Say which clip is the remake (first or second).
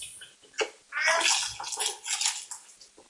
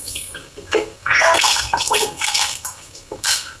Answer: second